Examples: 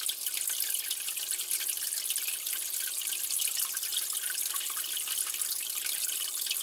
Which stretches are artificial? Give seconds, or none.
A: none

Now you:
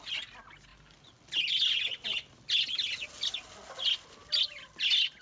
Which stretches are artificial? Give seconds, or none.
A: none